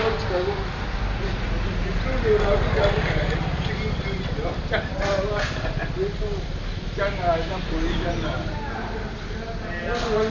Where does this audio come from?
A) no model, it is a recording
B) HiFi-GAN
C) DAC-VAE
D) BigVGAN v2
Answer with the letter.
A